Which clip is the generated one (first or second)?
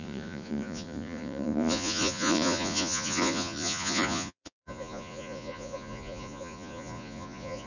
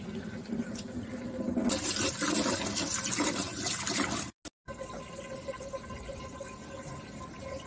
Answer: first